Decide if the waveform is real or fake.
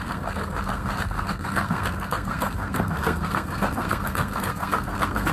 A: fake